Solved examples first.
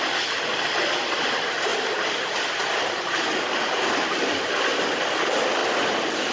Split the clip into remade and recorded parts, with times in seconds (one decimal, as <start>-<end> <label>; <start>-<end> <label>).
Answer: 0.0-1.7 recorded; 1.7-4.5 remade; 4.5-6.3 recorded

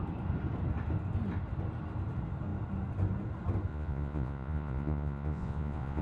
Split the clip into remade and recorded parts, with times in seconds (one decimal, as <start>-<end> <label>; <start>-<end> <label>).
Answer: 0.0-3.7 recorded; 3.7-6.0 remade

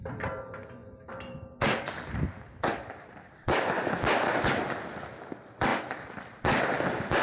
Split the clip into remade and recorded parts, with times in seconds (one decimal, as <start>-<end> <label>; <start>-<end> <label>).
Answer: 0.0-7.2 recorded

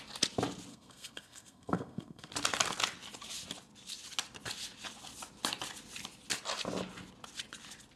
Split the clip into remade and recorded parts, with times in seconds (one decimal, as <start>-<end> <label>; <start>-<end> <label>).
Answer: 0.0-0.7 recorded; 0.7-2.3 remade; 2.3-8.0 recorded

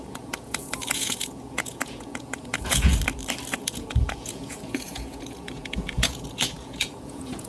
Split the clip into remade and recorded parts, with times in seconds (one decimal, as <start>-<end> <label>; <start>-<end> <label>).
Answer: 0.0-2.9 remade; 2.9-3.5 recorded; 3.5-7.5 remade

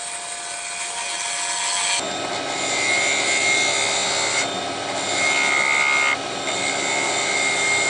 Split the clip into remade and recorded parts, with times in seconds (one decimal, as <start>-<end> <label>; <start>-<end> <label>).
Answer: 0.0-7.9 recorded

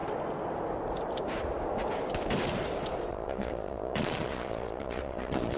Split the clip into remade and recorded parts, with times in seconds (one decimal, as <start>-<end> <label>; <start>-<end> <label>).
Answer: 0.0-3.1 recorded; 3.1-5.6 remade